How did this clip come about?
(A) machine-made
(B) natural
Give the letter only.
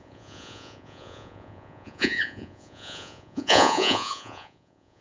A